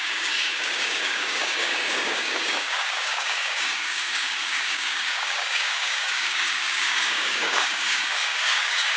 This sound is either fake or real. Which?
fake